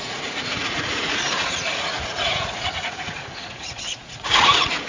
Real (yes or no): no